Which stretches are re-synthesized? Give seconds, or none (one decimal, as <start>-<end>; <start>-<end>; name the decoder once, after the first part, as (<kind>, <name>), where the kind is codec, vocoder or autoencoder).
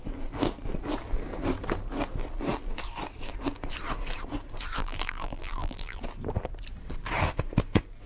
4.8-6.0 (vocoder, BigVGAN v2)